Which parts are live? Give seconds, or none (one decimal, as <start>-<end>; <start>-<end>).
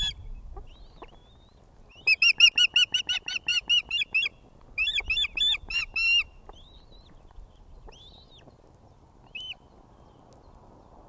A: 0.0-11.1